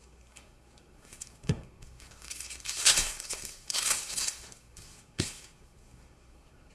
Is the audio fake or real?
fake